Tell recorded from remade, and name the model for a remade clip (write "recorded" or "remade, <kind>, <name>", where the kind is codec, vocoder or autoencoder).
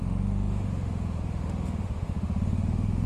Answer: remade, autoencoder, DAC-VAE